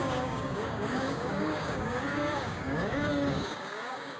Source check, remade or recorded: remade